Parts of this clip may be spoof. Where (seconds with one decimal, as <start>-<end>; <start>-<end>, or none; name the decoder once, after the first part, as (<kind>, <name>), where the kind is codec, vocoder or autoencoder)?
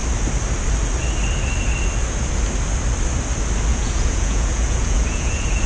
3.7-5.7 (vocoder, Vocos)